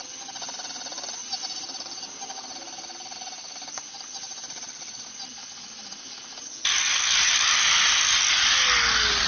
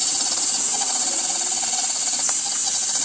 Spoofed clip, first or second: second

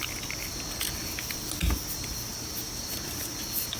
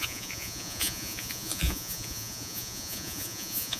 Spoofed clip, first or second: second